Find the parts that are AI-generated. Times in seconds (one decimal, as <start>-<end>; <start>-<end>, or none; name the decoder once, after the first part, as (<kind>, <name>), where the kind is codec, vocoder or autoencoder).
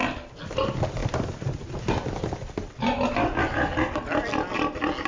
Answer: none